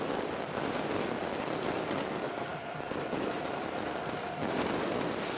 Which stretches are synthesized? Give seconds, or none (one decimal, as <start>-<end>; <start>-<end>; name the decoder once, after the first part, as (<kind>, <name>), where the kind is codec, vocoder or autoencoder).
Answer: none